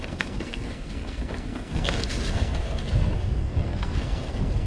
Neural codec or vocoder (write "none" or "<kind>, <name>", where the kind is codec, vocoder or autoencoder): codec, SNAC